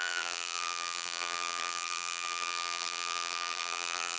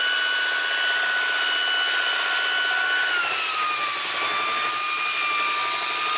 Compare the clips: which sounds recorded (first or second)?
second